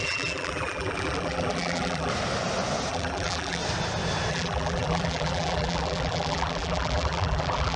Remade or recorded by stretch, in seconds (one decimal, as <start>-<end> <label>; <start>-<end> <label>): 0.0-2.1 remade; 2.1-2.9 recorded; 2.9-3.6 remade; 3.6-4.3 recorded; 4.3-7.8 remade